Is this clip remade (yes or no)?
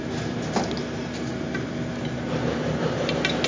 no